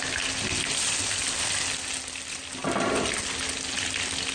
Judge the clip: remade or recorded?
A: recorded